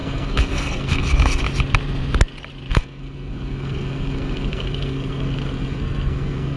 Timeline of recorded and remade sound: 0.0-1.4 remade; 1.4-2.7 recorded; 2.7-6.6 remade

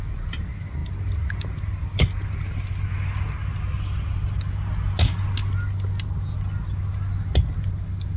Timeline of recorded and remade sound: 0.0-8.2 recorded

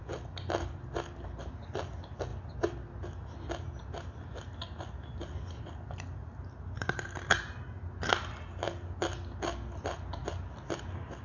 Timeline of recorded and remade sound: 0.0-11.2 recorded